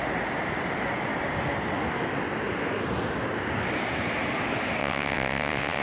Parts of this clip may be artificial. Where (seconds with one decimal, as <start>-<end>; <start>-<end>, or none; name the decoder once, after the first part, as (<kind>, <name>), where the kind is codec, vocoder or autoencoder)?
4.8-5.8 (vocoder, WaveNeXt)